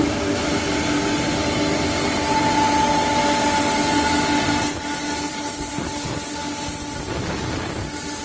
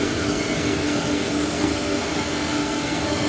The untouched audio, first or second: first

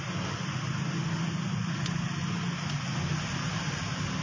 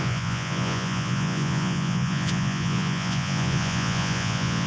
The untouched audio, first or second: first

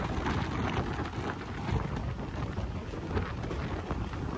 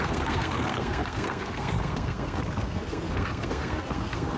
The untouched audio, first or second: first